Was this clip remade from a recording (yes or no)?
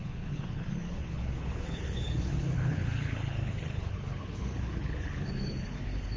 yes